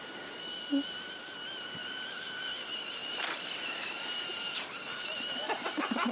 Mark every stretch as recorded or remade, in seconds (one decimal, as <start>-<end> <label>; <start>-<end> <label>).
0.0-1.8 recorded; 1.8-2.3 remade; 2.3-3.0 recorded; 3.0-4.8 remade; 4.8-6.1 recorded